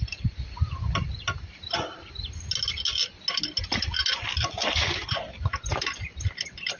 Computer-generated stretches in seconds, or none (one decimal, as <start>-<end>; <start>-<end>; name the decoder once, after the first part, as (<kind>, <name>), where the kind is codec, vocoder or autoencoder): 0.0-0.6 (vocoder, BigVGAN v2); 4.6-5.7

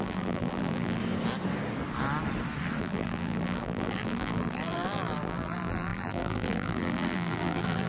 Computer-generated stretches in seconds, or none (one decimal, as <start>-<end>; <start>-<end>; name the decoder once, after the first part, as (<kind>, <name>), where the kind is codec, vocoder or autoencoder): 0.0-1.0 (vocoder, BigVGAN v2); 2.8-7.9

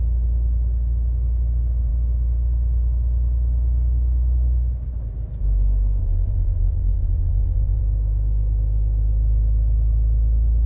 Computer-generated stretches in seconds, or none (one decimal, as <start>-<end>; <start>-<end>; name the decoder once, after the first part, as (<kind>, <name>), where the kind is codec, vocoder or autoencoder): 6.0-7.8 (vocoder, BigVGAN v2)

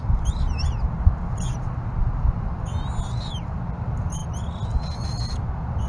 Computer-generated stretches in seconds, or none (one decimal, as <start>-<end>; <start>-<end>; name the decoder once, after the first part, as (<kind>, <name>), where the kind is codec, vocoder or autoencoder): 2.0-2.7 (vocoder, BigVGAN v2)

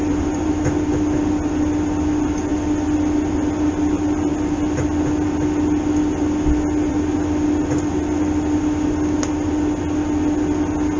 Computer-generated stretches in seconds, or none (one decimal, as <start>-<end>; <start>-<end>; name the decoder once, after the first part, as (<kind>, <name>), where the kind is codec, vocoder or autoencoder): 0.0-0.6 (vocoder, BigVGAN v2)

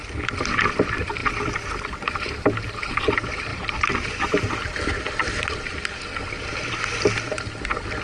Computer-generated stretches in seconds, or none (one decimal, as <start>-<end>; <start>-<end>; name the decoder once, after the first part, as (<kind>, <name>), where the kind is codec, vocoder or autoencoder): 3.5-6.9 (vocoder, BigVGAN v2)

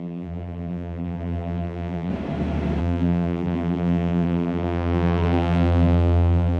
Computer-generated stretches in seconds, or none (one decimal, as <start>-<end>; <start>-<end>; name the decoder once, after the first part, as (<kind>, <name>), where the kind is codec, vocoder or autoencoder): 0.0-2.1 (vocoder, BigVGAN v2); 2.8-6.6